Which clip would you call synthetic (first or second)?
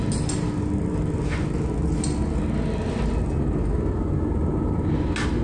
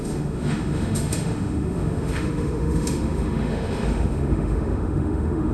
second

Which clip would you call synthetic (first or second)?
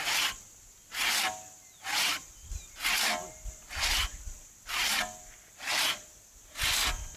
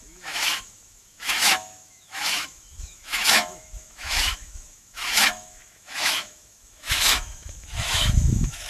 second